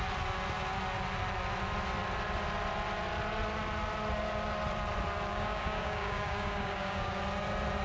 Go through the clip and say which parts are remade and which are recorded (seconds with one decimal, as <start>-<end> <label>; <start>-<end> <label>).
0.0-5.3 recorded; 5.3-7.2 remade; 7.2-7.8 recorded